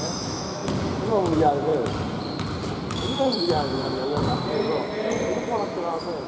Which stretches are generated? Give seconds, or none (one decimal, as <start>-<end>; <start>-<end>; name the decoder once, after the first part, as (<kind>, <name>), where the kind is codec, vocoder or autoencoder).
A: 0.0-0.6 (autoencoder, DAC-VAE); 1.1-1.7; 2.9-4.1; 5.6-6.3